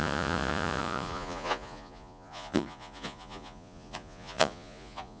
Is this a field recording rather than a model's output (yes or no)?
no